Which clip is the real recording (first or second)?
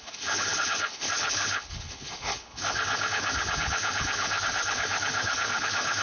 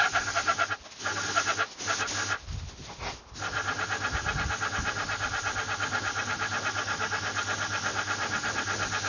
second